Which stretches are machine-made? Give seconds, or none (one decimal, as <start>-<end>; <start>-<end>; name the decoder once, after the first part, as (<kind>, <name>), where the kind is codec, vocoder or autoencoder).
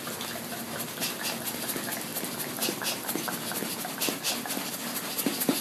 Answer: none